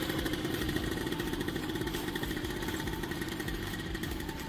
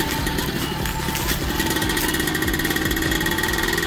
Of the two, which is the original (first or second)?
second